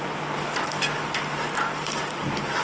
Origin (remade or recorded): recorded